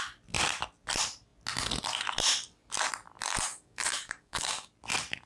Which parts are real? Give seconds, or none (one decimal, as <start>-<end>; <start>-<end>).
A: 0.0-3.5; 4.7-5.3